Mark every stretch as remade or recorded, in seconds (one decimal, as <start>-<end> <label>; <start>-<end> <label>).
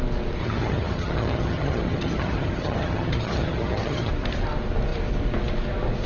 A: 0.0-0.4 recorded; 0.4-4.1 remade; 4.1-6.1 recorded